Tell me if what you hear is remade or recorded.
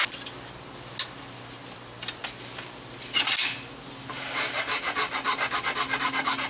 recorded